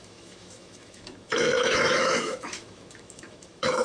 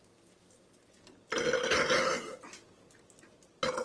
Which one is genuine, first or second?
second